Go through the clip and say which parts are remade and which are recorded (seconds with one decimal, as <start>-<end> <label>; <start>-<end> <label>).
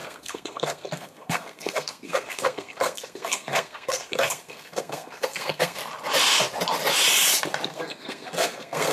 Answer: 0.0-5.8 remade; 5.8-7.7 recorded; 7.7-8.9 remade